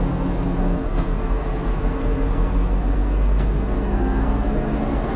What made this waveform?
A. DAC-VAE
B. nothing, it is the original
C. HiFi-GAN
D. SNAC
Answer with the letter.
D